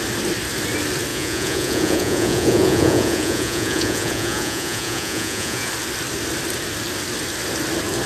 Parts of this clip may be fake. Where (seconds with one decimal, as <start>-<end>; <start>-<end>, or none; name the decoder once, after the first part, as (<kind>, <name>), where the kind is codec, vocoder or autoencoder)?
1.1-5.7 (vocoder, Vocos)